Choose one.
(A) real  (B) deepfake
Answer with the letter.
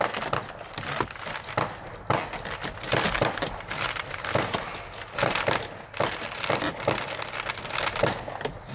A